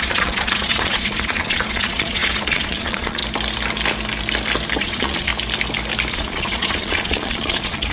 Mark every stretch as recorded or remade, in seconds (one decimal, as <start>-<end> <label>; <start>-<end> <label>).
0.0-3.2 remade; 3.2-4.8 recorded; 4.8-5.3 remade; 5.3-6.1 recorded; 6.1-7.9 remade

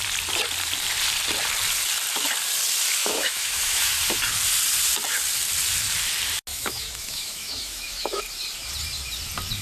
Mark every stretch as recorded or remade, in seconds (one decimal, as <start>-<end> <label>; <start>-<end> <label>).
0.0-3.0 recorded; 3.0-3.9 remade; 3.9-6.5 recorded; 6.5-8.2 remade; 8.2-9.6 recorded

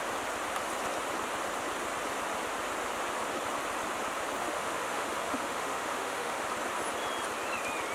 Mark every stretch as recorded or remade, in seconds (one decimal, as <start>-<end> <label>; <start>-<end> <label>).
0.0-4.4 recorded; 4.4-6.4 remade; 6.4-7.9 recorded

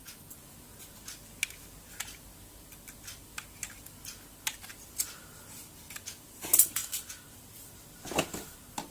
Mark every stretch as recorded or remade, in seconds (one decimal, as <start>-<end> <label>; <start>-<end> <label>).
0.0-8.9 recorded